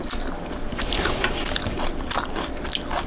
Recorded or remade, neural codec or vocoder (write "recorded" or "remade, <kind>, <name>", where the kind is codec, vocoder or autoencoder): recorded